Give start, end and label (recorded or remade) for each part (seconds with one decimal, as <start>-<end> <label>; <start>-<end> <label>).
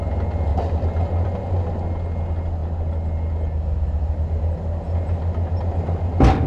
0.0-0.5 recorded; 0.5-1.5 remade; 1.5-6.5 recorded